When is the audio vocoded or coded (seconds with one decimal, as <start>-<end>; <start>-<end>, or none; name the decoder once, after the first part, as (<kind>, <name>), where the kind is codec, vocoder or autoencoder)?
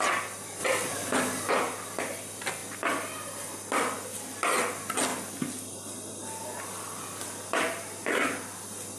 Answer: 0.6-1.5 (vocoder, BigVGAN v2); 2.6-3.3